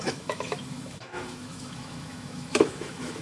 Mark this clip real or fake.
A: fake